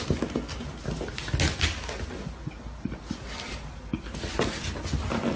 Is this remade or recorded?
recorded